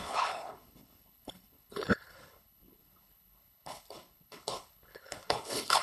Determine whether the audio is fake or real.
fake